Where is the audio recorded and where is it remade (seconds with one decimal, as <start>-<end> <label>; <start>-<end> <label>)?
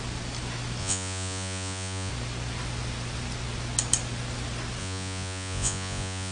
0.0-0.8 recorded; 0.8-2.1 remade; 2.1-4.8 recorded; 4.8-6.3 remade